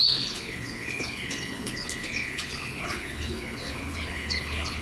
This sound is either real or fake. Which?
fake